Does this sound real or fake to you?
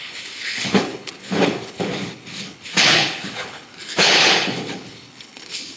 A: fake